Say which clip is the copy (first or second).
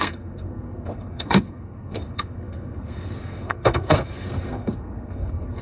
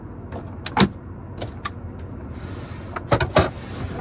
first